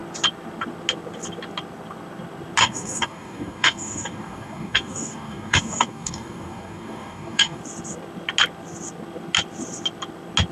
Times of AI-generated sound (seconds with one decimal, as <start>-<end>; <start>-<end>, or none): 2.6-7.6

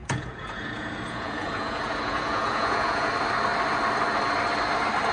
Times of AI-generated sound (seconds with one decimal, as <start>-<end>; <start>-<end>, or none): 0.0-3.1